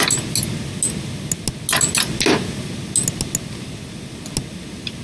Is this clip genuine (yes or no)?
yes